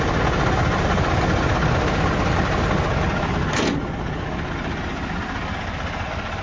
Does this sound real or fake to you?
real